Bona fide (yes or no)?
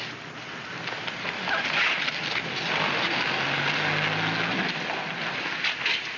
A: yes